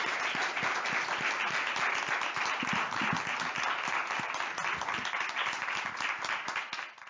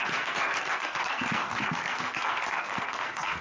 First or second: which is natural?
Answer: first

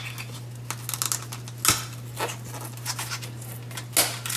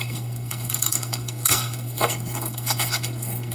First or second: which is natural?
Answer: first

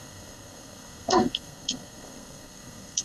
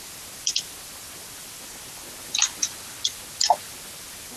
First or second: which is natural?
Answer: second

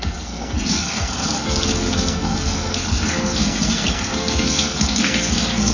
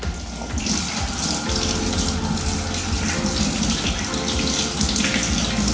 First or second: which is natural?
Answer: second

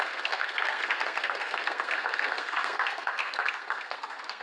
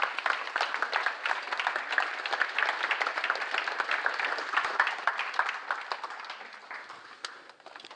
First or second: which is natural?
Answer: second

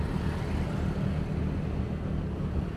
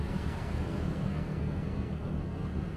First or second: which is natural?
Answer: first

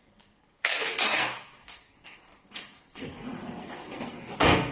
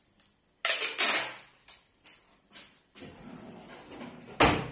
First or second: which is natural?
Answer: second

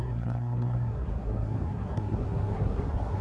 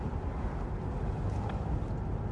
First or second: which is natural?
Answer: second